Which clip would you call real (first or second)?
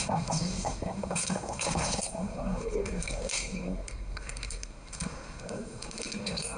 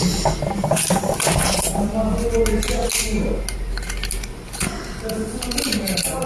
second